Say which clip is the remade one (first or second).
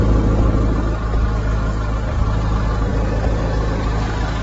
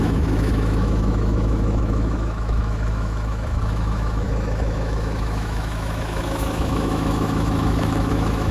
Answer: second